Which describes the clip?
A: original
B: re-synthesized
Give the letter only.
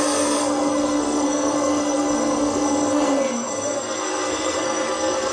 B